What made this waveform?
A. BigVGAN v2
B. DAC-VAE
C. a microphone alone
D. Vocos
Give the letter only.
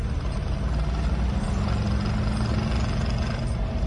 C